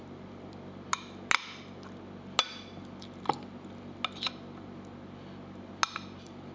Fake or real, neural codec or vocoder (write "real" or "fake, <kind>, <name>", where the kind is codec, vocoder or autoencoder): real